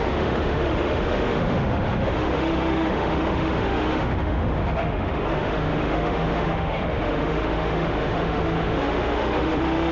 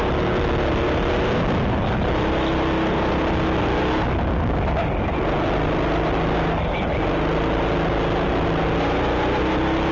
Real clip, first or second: second